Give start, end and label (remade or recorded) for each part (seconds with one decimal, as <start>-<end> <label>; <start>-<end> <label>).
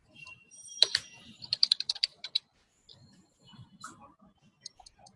0.0-0.6 recorded; 0.6-2.3 remade; 2.3-5.2 recorded